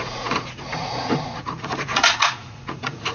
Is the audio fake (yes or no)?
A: yes